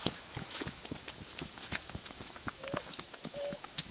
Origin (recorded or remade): remade